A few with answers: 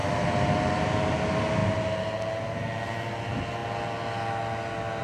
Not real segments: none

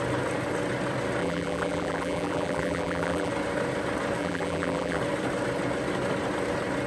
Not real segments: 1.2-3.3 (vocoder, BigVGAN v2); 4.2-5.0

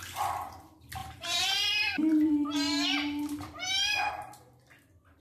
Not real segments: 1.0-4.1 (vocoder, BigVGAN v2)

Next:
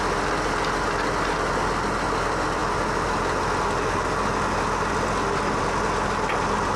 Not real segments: none

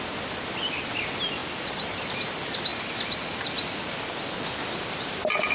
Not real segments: 1.4-2.1 (vocoder, BigVGAN v2)

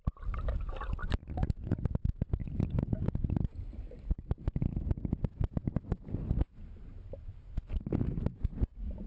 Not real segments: 1.0-1.9 (vocoder, BigVGAN v2); 2.4-3.4

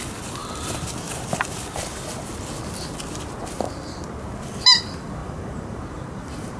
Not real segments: 5.2-6.6 (vocoder, BigVGAN v2)

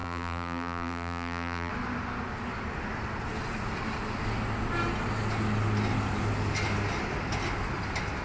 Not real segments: 0.0-1.7 (vocoder, BigVGAN v2)